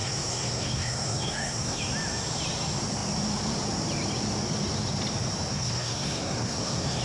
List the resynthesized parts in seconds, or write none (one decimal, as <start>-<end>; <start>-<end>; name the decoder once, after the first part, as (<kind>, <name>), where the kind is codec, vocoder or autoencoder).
0.0-1.8 (codec, SNAC); 5.5-7.0